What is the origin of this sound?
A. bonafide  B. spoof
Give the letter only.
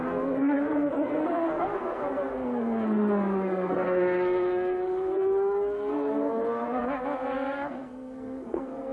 B